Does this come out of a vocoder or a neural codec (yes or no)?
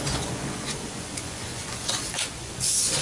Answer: yes